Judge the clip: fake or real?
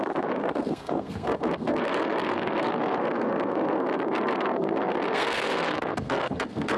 fake